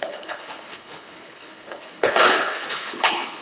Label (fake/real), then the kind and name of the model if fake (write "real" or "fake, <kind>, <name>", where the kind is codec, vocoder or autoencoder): fake, codec, HILCodec